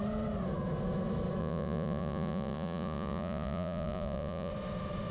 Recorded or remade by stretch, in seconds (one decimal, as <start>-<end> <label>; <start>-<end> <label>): 0.0-1.4 recorded; 1.4-4.5 remade; 4.5-5.1 recorded